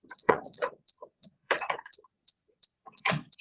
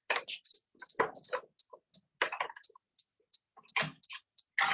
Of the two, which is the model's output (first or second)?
first